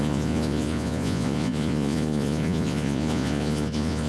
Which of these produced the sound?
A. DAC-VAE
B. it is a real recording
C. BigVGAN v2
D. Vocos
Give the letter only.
D